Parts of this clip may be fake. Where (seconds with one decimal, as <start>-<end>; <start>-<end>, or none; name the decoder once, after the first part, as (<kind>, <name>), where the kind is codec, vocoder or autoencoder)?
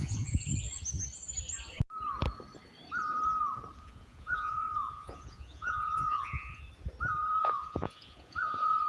0.0-0.5 (vocoder, Vocos); 3.8-6.6; 7.4-8.9